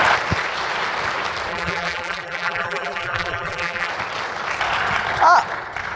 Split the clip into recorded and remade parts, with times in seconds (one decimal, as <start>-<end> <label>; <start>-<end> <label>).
0.0-1.5 recorded; 1.5-3.9 remade; 3.9-6.0 recorded